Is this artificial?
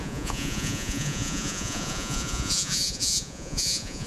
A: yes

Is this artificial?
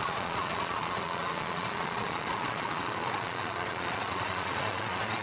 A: yes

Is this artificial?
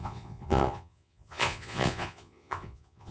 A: yes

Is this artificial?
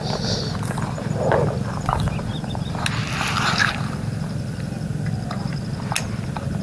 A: no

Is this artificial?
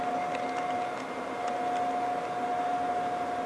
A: no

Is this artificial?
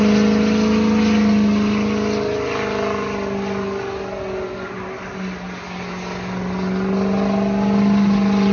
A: no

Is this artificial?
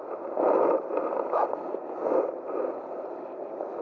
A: no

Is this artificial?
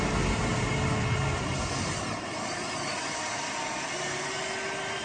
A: no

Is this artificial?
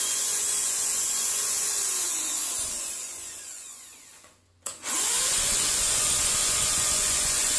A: yes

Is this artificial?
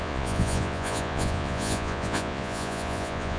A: yes